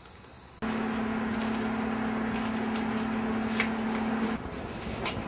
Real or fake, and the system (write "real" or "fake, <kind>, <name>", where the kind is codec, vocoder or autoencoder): real